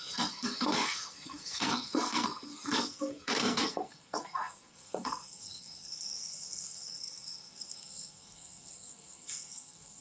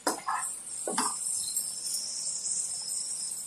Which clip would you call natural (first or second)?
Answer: second